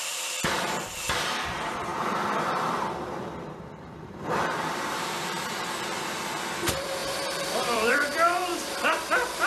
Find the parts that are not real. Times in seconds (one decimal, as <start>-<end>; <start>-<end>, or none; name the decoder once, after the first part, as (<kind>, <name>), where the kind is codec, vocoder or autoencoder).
0.0-9.5 (vocoder, BigVGAN v2)